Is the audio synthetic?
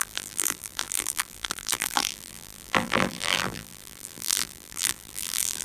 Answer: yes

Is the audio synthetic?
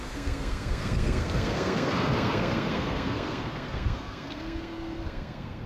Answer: yes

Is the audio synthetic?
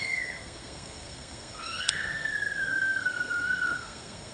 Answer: yes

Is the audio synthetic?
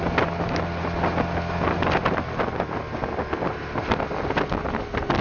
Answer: no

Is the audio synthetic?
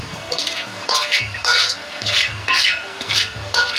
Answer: yes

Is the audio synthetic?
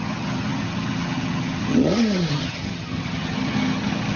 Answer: yes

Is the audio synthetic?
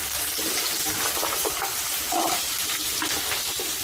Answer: no